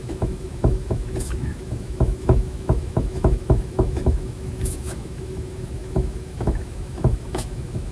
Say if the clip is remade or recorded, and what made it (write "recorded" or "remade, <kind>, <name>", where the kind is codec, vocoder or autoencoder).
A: remade, autoencoder, DAC-VAE